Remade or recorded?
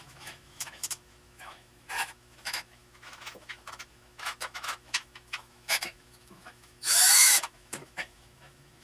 remade